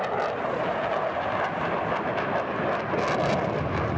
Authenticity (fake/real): real